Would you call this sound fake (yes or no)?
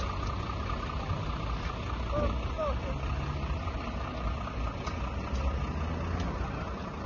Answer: no